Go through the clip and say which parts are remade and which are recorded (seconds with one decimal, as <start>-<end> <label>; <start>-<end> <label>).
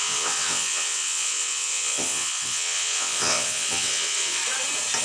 0.0-4.4 remade; 4.4-5.0 recorded